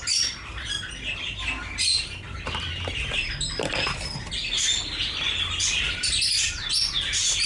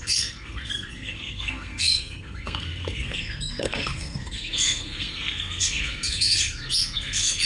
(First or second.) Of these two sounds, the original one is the first